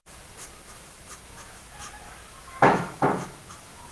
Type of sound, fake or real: fake